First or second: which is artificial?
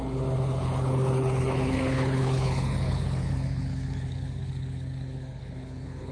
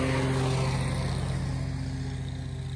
first